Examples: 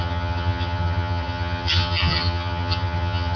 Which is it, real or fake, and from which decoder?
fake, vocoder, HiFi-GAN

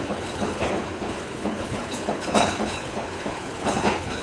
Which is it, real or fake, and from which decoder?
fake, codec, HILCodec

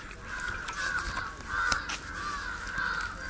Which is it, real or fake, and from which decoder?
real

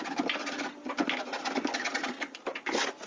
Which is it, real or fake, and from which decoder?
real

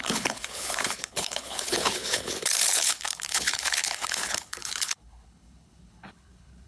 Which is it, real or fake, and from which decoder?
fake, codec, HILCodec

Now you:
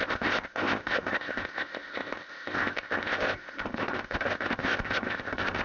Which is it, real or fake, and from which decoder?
fake, codec, ZipCodec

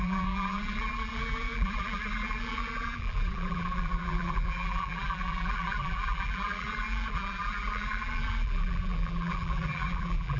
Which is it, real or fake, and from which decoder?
fake, vocoder, BigVGAN v2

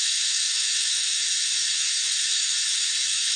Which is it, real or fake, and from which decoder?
fake, autoencoder, DAC-VAE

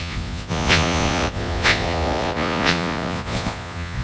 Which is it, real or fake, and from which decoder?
fake, vocoder, Vocos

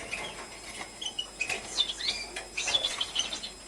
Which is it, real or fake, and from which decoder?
real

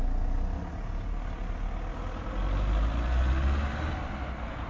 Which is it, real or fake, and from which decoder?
real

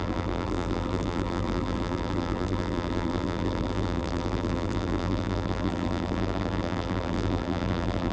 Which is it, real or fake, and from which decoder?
fake, vocoder, BigVGAN v2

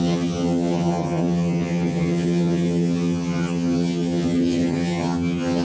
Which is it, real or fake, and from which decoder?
fake, vocoder, HiFi-GAN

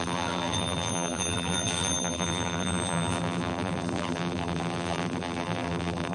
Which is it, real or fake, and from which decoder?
fake, vocoder, BigVGAN v2